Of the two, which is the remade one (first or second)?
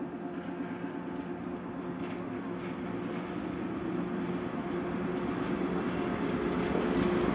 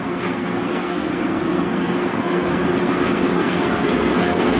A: second